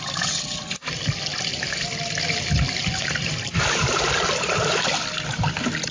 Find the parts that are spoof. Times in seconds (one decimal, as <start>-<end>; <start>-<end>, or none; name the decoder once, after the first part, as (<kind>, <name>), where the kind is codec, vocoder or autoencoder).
none

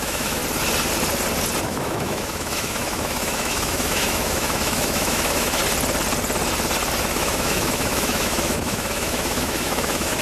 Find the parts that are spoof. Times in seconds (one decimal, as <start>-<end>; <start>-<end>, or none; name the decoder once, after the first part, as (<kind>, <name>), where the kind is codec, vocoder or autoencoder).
0.0-0.4 (autoencoder, DAC-VAE); 1.6-5.6; 7.0-10.2